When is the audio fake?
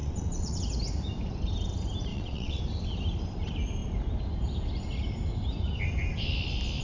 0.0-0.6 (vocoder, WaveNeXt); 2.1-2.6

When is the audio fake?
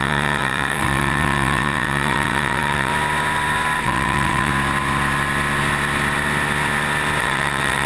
0.0-2.9 (vocoder, WaveNeXt); 3.8-4.5; 7.2-7.9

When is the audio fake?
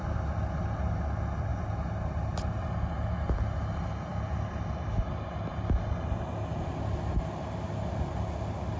none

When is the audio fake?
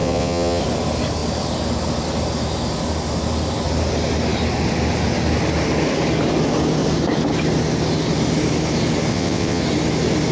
0.0-0.6 (vocoder, WaveNeXt); 9.1-9.6